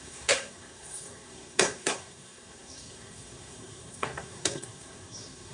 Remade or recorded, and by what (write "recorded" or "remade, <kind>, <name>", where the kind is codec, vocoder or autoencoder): remade, codec, SNAC